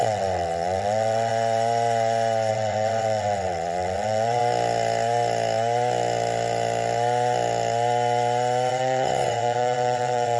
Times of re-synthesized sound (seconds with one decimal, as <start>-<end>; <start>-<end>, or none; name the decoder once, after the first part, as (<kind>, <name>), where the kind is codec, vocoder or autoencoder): 0.0-1.3 (vocoder, WaveNeXt); 2.5-4.4; 8.7-10.4